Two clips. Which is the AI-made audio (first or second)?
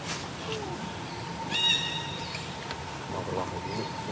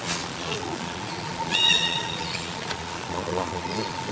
second